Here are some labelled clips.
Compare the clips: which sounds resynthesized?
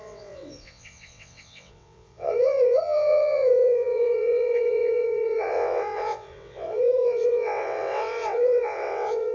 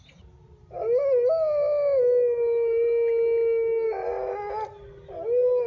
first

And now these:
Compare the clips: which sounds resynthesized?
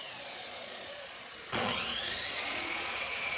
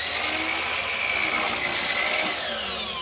first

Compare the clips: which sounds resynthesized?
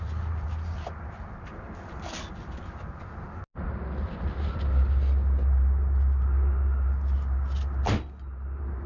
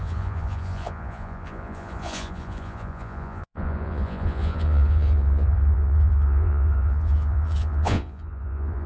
second